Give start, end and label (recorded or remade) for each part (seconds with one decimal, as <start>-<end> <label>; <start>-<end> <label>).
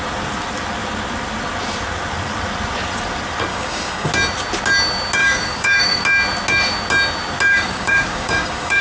0.0-3.5 recorded; 3.5-4.1 remade; 4.1-5.2 recorded; 5.2-6.0 remade; 6.0-7.5 recorded; 7.5-8.8 remade